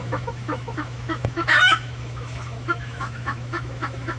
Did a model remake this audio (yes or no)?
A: yes